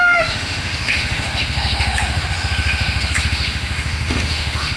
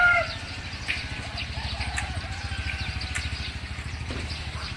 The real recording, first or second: second